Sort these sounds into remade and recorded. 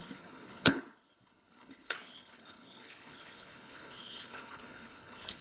remade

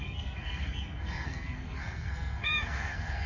remade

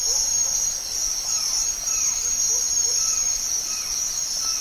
remade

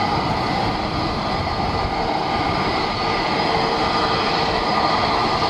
remade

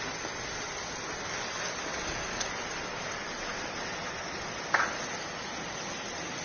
recorded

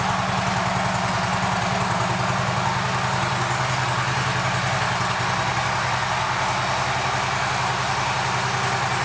recorded